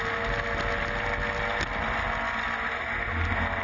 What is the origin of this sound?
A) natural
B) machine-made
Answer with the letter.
A